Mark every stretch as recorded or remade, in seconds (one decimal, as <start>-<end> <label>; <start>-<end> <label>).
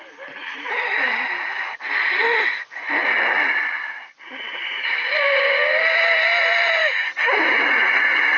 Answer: 0.0-6.8 recorded; 6.8-7.5 remade; 7.5-8.4 recorded